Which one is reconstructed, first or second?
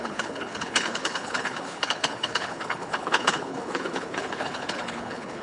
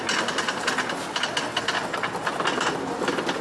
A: first